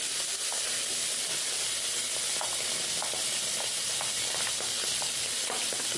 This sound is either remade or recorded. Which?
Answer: recorded